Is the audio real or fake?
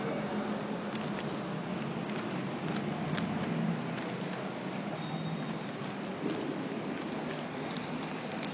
real